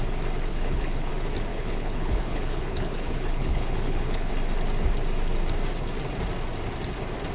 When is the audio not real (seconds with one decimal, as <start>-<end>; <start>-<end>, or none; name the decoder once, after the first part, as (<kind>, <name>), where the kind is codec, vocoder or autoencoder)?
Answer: 0.5-1.1 (codec, HILCodec); 1.5-4.3